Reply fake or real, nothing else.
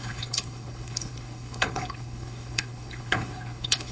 fake